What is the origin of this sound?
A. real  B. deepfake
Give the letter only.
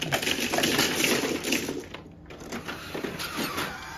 A